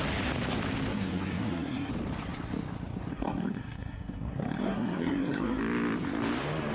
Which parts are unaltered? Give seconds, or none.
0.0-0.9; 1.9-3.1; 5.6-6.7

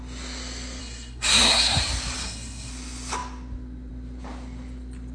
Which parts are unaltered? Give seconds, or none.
0.0-0.8; 1.8-2.2; 2.7-5.1

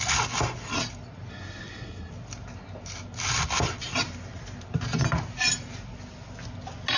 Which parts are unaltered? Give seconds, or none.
0.0-1.3; 2.1-7.0

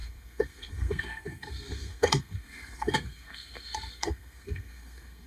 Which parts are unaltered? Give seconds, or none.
none

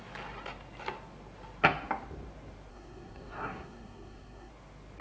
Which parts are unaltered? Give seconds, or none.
0.0-2.7; 4.5-5.0

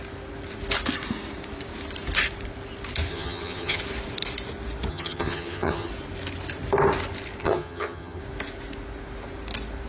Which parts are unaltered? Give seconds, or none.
0.0-3.1; 3.8-4.9; 5.9-7.4; 8.2-9.9